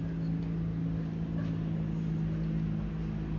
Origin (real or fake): real